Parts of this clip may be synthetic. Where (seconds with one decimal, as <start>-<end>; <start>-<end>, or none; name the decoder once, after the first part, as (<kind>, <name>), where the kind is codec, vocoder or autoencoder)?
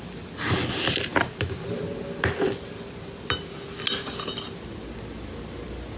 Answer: none